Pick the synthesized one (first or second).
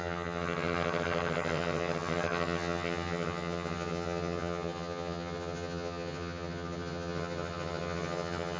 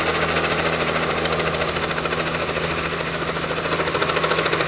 first